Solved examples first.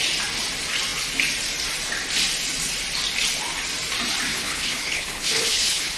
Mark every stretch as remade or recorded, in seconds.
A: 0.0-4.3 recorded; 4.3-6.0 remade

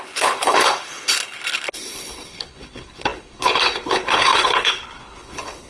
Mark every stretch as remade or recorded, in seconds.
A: 0.0-5.7 remade

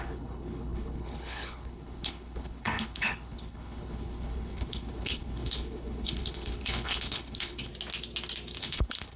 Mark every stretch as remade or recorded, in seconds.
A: 0.0-7.7 remade; 7.7-8.6 recorded; 8.6-9.2 remade

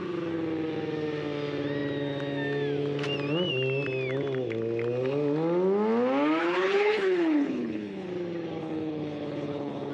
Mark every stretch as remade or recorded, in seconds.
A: 0.0-6.4 recorded; 6.4-8.1 remade; 8.1-8.6 recorded; 8.6-9.9 remade

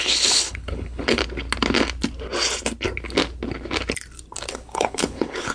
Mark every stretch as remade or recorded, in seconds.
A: 0.0-1.2 remade; 1.2-4.5 recorded; 4.5-5.5 remade

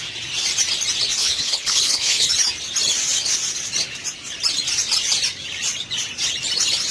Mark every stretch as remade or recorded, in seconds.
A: 0.0-1.2 recorded; 1.2-2.3 remade; 2.3-6.9 recorded

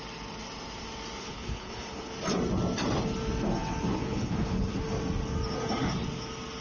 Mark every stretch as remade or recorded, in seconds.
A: 0.0-1.2 recorded; 1.2-2.1 remade; 2.1-3.9 recorded; 3.9-4.8 remade; 4.8-6.6 recorded